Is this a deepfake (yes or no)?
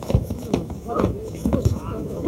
yes